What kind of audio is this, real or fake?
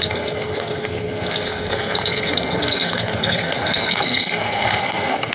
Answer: fake